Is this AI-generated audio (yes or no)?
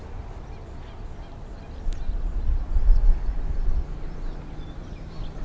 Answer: no